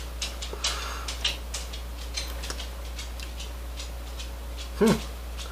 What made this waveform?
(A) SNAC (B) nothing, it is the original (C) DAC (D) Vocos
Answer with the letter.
B